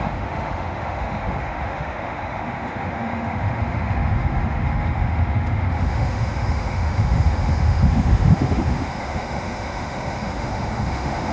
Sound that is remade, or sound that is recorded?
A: remade